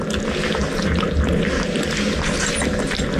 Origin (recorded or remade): recorded